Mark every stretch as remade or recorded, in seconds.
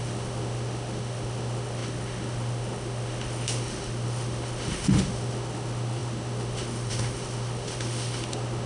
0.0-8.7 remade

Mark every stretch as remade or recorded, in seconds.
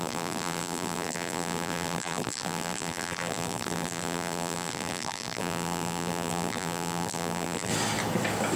0.0-7.7 remade; 7.7-8.6 recorded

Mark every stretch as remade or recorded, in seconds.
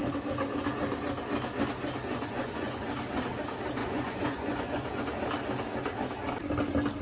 0.0-2.0 recorded; 2.0-2.9 remade; 2.9-3.8 recorded; 3.8-5.0 remade; 5.0-7.0 recorded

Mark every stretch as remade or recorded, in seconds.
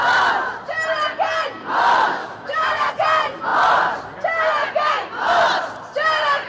0.0-2.2 recorded; 2.2-2.9 remade; 2.9-6.5 recorded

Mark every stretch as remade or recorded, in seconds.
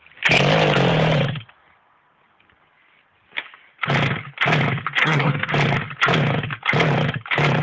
0.0-5.0 recorded; 5.0-5.5 remade; 5.5-7.6 recorded